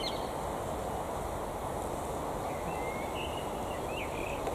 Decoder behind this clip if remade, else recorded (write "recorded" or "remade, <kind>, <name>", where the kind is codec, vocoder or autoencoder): recorded